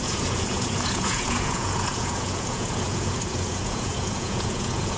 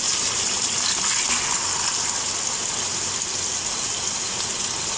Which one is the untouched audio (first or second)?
second